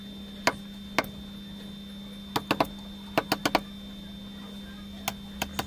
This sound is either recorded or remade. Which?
recorded